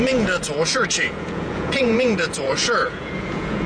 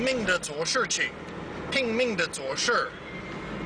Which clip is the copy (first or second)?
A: first